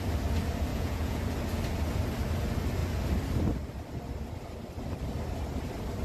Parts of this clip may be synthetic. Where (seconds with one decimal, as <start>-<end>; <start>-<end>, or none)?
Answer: 0.7-1.2